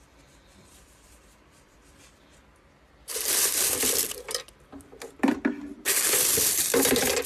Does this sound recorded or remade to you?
remade